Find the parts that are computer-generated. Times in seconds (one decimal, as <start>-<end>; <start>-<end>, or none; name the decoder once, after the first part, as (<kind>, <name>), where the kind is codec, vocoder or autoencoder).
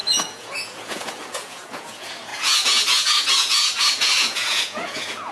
0.0-5.3 (vocoder, Vocos)